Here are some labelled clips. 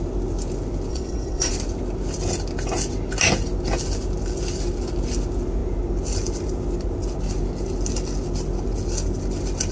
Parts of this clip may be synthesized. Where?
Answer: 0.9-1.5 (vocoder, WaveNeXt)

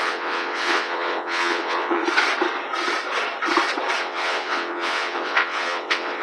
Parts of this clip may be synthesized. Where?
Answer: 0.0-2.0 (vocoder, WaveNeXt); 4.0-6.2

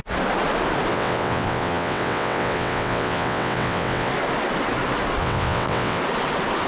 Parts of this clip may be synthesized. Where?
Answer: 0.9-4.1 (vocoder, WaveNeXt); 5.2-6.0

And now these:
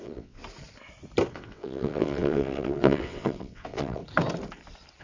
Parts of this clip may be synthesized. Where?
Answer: 0.0-0.4 (vocoder, WaveNeXt); 1.3-4.0